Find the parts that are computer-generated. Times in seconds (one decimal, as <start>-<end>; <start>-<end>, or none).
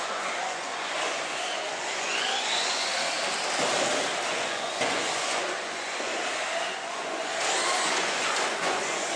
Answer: 0.0-2.9; 4.3-6.1; 6.6-7.3; 7.8-9.2